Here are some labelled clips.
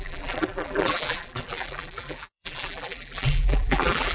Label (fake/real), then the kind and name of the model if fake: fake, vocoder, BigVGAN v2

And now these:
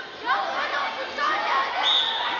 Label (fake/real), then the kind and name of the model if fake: real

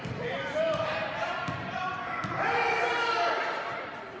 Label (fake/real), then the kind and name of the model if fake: fake, vocoder, BigVGAN v2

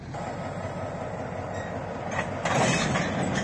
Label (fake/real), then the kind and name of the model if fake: real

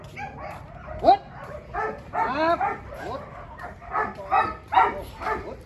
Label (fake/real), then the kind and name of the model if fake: real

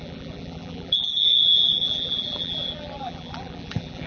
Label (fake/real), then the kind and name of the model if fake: fake, vocoder, BigVGAN v2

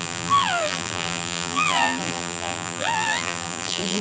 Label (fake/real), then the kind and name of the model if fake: fake, vocoder, BigVGAN v2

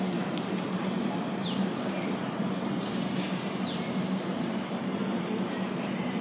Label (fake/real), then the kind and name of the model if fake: fake, vocoder, BigVGAN v2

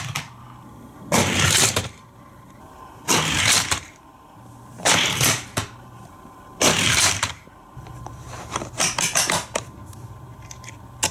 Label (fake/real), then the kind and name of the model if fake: fake, vocoder, BigVGAN v2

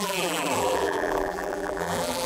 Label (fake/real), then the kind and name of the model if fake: fake, vocoder, BigVGAN v2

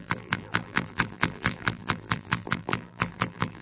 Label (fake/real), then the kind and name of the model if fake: fake, vocoder, BigVGAN v2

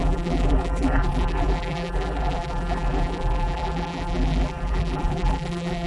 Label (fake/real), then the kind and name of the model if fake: fake, vocoder, BigVGAN v2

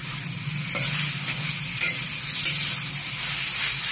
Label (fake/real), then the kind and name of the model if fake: real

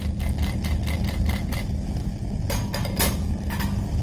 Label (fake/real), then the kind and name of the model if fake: real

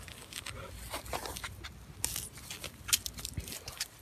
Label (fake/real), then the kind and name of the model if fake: real